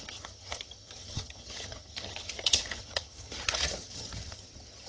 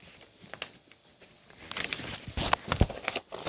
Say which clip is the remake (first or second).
first